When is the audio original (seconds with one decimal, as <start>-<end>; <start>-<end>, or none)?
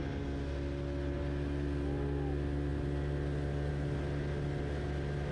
0.0-5.3